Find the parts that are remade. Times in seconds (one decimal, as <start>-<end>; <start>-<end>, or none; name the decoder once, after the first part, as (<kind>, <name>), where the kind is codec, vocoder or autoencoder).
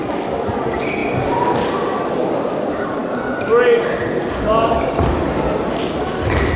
none